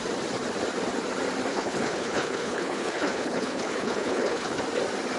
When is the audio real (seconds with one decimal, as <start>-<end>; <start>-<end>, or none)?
0.0-1.5; 4.6-5.2